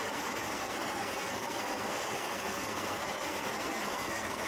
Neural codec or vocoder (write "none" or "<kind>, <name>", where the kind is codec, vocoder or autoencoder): codec, SNAC